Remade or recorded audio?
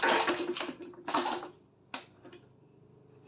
recorded